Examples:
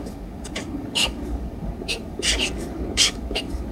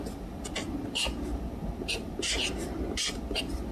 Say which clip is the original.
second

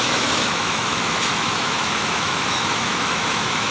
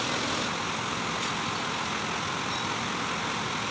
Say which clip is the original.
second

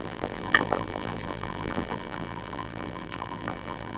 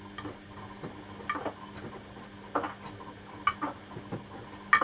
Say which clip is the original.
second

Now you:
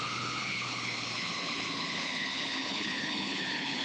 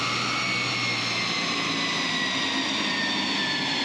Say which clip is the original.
second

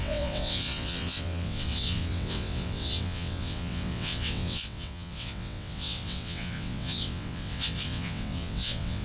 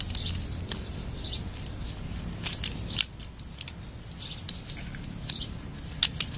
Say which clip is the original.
second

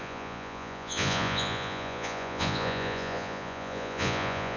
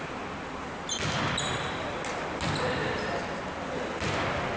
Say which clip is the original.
second